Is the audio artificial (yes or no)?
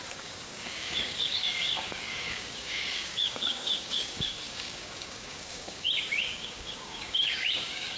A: yes